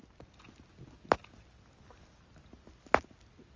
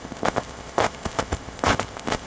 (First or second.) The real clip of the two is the first